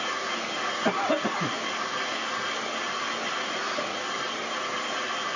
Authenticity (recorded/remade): recorded